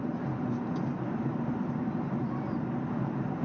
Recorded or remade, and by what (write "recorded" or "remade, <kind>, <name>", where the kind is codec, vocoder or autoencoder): remade, vocoder, BigVGAN v2